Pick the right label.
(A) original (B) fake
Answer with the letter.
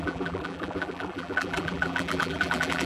B